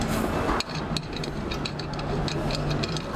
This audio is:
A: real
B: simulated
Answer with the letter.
A